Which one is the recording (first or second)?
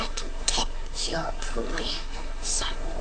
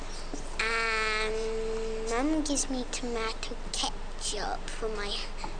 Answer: second